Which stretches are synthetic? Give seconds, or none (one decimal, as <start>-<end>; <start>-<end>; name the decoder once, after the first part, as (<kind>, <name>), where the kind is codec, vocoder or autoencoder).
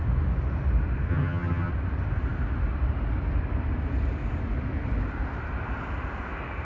1.1-1.7 (vocoder, HiFi-GAN)